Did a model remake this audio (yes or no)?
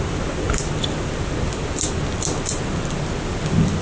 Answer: no